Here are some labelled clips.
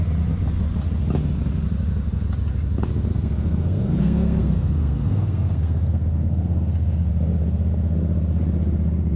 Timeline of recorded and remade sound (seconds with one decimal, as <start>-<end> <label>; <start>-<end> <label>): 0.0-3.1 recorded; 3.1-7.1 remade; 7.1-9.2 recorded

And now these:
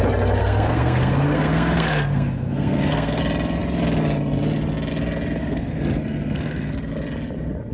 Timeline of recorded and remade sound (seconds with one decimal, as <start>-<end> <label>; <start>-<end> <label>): 0.0-0.4 recorded; 0.4-3.2 remade; 3.2-5.4 recorded; 5.4-6.9 remade; 6.9-7.7 recorded

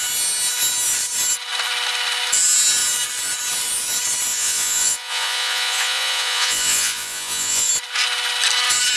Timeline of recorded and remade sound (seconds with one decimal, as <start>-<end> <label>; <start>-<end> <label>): 0.0-4.3 recorded; 4.3-7.7 remade; 7.7-9.0 recorded